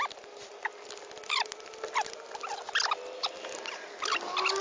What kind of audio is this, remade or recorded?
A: recorded